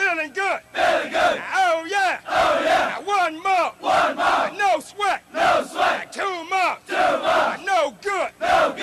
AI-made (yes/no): no